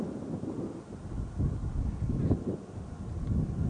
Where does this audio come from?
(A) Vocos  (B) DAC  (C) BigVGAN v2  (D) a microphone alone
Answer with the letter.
D